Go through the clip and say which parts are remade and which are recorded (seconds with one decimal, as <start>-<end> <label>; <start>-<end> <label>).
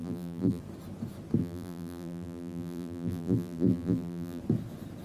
0.0-0.6 remade; 0.6-1.4 recorded; 1.4-4.4 remade; 4.4-5.0 recorded